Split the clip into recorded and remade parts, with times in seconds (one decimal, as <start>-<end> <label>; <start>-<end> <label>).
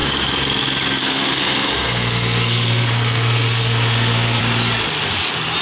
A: 0.0-1.0 recorded; 1.0-4.4 remade; 4.4-5.6 recorded